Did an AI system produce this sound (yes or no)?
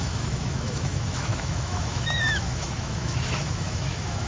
yes